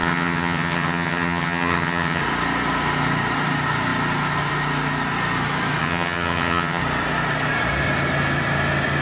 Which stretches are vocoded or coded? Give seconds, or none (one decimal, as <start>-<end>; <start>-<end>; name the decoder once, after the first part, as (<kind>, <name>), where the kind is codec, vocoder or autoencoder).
0.0-2.2 (vocoder, HiFi-GAN); 5.8-6.8